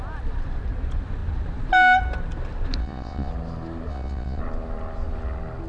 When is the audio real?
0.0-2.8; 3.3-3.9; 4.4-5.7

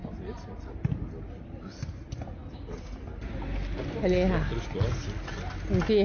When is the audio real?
0.0-6.0

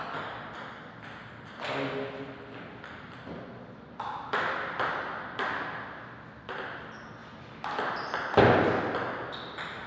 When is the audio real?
0.0-9.9

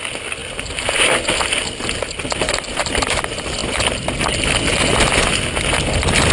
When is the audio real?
0.0-6.3

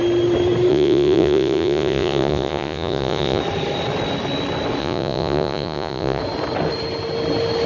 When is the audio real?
0.0-0.7; 3.4-4.8; 6.2-7.7

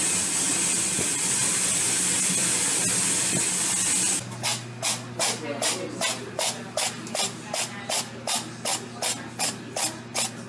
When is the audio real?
0.0-10.5